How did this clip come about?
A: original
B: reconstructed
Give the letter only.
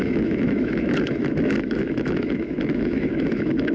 B